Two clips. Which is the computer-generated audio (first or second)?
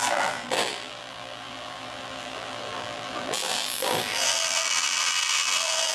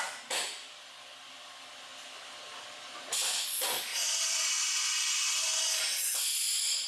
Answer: first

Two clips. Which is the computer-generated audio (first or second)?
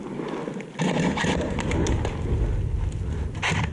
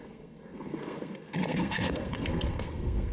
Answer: second